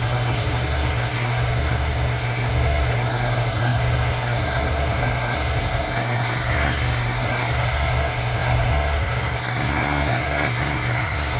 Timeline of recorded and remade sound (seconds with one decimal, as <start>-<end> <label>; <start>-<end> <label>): 0.0-11.4 remade